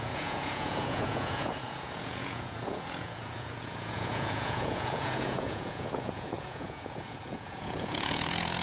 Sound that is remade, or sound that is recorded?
remade